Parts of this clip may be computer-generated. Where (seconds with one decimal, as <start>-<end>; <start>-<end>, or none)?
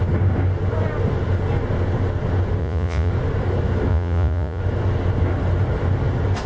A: 2.6-3.1; 3.9-4.6